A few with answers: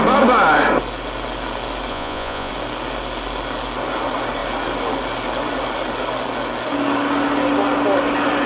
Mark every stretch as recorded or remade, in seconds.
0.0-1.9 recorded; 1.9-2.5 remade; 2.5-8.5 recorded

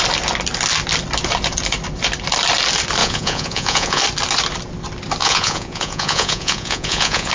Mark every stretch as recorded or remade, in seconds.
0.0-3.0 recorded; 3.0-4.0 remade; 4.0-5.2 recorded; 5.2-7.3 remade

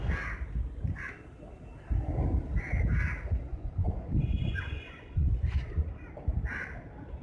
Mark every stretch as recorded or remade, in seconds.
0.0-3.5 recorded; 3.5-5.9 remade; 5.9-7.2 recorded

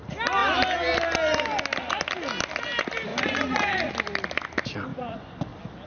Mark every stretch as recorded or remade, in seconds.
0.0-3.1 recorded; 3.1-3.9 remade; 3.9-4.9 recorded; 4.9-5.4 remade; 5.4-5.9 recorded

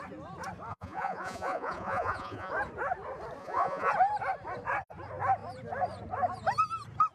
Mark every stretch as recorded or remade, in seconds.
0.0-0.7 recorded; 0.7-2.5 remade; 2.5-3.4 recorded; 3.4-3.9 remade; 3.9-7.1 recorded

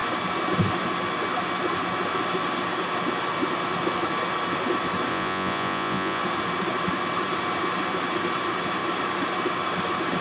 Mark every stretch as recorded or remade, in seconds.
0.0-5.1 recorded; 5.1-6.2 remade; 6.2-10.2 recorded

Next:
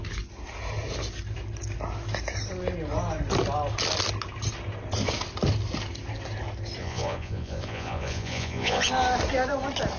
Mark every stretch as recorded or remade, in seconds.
0.0-6.8 recorded; 6.8-8.9 remade; 8.9-10.0 recorded

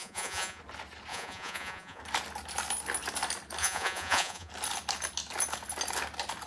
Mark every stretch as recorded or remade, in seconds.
0.0-0.6 remade; 0.6-1.1 recorded; 1.1-2.0 remade; 2.0-3.6 recorded; 3.6-4.5 remade; 4.5-6.5 recorded